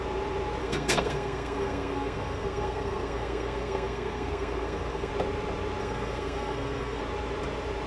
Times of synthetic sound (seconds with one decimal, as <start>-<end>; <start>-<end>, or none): 0.6-5.1; 5.8-7.0